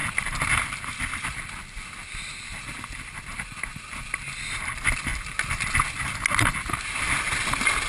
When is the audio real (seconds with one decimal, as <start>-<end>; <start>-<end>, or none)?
0.0-7.9